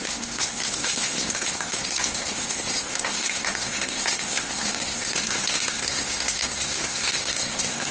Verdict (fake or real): fake